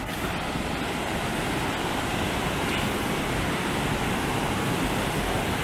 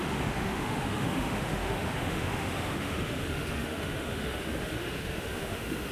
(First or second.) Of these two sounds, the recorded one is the first